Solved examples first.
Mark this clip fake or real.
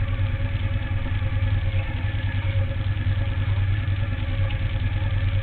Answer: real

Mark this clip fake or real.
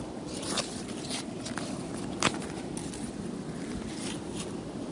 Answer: real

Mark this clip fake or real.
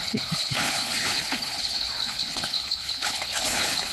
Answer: fake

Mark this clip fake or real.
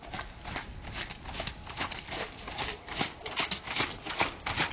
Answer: real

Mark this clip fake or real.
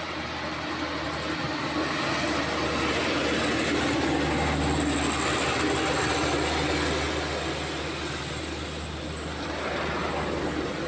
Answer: real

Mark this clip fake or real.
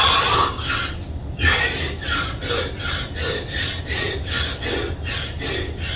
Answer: real